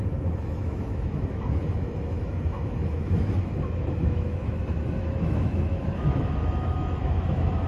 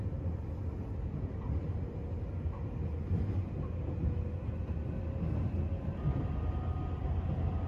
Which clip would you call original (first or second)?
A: second